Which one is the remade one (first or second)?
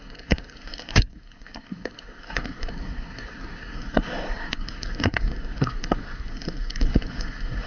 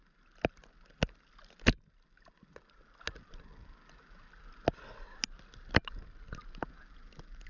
first